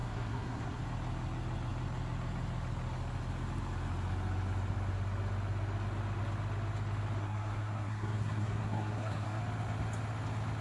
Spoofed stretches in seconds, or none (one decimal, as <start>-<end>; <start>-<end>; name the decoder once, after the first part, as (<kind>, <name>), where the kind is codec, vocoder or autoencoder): 0.0-0.8 (codec, SNAC); 7.2-9.4